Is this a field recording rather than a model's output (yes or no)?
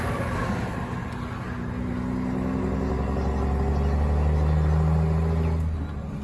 yes